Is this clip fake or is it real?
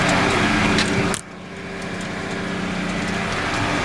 real